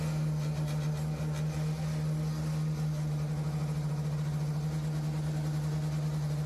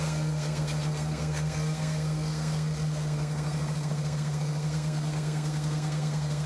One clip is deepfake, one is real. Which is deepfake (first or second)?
second